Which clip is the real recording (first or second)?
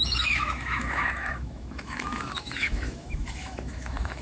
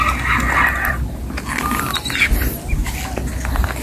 second